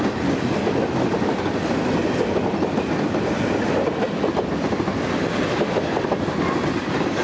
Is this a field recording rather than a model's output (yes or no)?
yes